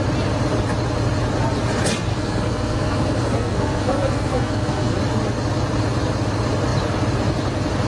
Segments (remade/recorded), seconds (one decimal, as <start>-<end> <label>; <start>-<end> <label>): 0.0-2.1 recorded; 2.1-5.0 remade; 5.0-7.9 recorded